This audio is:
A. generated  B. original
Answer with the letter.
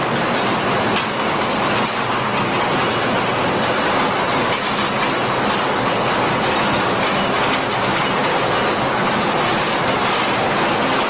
B